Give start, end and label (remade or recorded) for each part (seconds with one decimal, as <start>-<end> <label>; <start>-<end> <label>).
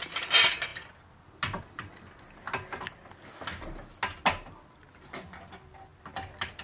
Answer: 0.0-6.6 recorded